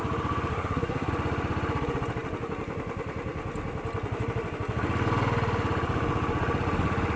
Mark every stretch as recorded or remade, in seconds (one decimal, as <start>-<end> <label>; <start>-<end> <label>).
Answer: 0.0-0.5 recorded; 0.5-1.1 remade; 1.1-7.2 recorded